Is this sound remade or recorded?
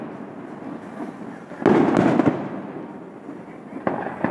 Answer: recorded